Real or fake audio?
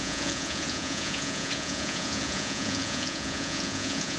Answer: fake